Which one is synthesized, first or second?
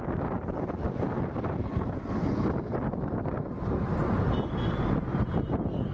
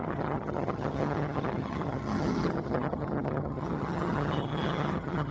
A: second